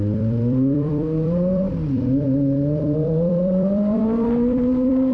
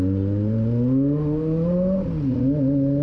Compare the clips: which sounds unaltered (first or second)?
second